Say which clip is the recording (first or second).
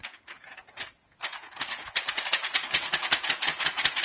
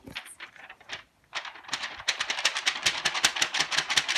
second